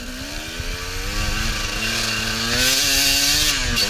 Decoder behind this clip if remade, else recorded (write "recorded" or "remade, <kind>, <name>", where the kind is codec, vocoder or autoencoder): recorded